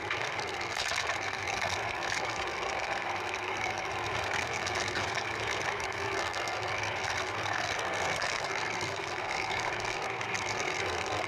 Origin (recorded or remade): remade